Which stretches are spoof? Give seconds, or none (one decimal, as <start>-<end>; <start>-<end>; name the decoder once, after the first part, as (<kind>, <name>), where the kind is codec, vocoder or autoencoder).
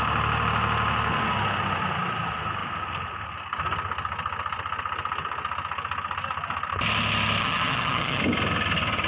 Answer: 7.4-8.2 (vocoder, HiFi-GAN)